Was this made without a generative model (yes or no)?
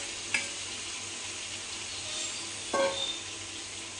yes